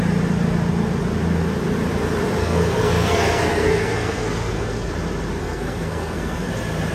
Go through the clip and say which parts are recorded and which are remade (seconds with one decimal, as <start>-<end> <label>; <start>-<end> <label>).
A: 0.0-2.4 recorded; 2.4-4.9 remade; 4.9-5.4 recorded; 5.4-6.5 remade; 6.5-6.9 recorded